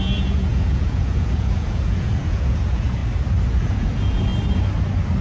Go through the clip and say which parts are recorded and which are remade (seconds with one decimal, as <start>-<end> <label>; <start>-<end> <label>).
0.0-3.0 remade; 3.0-3.6 recorded; 3.6-4.3 remade; 4.3-5.2 recorded